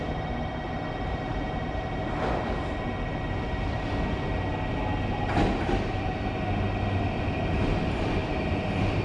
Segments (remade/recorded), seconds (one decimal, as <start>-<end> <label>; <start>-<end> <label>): 0.0-9.0 recorded